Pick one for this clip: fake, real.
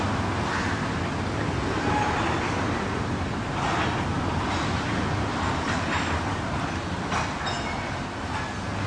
real